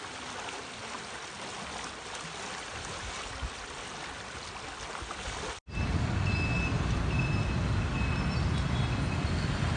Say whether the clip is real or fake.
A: real